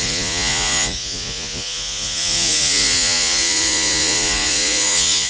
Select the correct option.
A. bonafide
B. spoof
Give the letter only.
B